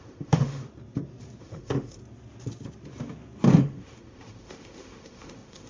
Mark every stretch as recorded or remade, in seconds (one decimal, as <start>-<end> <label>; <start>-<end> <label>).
0.0-0.6 remade; 0.6-1.4 recorded; 1.4-2.0 remade; 2.0-3.6 recorded; 3.6-5.7 remade